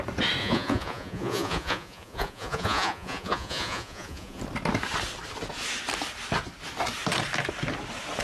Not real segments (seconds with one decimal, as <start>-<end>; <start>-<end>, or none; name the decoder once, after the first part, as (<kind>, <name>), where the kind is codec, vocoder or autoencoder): 0.4-4.4 (vocoder, Vocos)

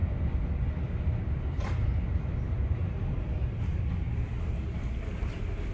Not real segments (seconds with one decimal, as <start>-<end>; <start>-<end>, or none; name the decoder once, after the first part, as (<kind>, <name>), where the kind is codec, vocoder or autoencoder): none

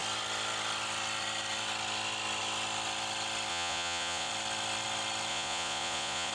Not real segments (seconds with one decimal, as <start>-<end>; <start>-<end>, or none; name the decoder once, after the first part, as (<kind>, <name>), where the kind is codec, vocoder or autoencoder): 3.5-4.3 (vocoder, Vocos); 5.3-6.3

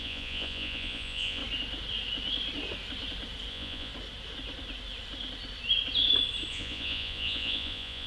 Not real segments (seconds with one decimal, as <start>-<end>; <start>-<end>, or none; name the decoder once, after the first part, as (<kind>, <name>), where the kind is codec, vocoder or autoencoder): 0.0-1.4 (vocoder, Vocos); 3.5-3.9; 6.5-8.1